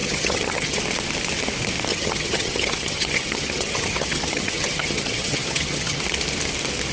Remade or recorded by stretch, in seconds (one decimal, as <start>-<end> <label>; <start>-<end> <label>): 0.0-0.8 remade; 0.8-1.9 recorded; 1.9-6.0 remade; 6.0-6.9 recorded